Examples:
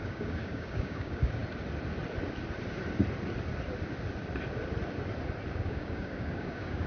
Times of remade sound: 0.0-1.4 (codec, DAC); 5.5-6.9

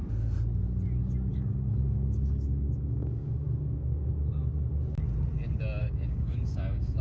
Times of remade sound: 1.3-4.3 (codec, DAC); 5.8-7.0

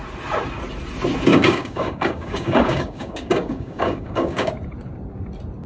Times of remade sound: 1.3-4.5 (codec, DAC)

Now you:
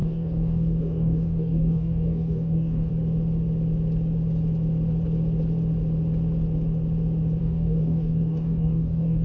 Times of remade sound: 0.0-2.9 (codec, DAC); 7.4-9.2